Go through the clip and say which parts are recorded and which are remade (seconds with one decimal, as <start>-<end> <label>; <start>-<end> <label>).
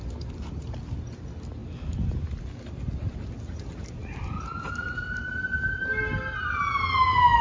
0.0-7.4 recorded